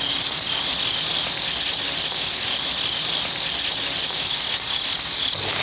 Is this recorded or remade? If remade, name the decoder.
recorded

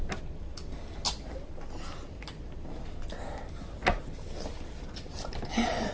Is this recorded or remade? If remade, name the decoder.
recorded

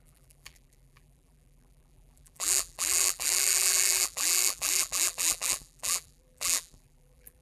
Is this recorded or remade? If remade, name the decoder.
remade, vocoder, BigVGAN v2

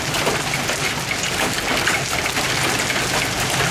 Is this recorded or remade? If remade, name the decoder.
recorded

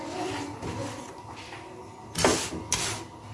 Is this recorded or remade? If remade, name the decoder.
recorded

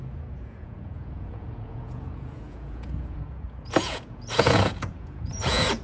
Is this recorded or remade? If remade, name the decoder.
remade, vocoder, Vocos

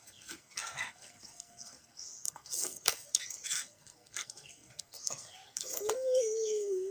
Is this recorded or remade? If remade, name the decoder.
remade, codec, SNAC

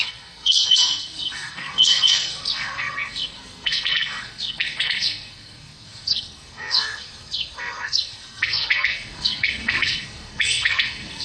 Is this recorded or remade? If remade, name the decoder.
remade, codec, SNAC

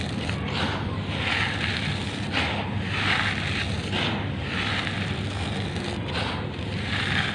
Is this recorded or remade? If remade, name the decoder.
recorded